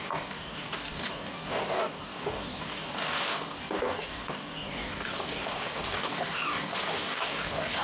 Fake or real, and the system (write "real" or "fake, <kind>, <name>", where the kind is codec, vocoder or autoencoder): fake, codec, DAC